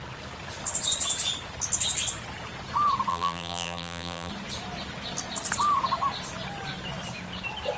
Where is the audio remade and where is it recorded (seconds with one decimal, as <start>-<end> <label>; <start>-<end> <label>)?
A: 0.0-3.1 recorded; 3.1-4.3 remade; 4.3-7.8 recorded

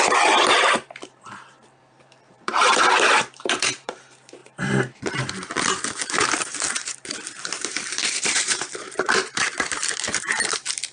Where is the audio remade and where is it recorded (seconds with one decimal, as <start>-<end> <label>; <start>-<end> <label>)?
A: 0.0-10.9 remade

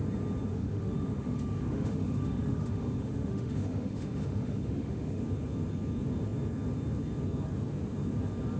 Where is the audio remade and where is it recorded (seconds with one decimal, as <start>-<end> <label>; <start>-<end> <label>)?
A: 0.0-0.5 recorded; 0.5-5.2 remade; 5.2-8.6 recorded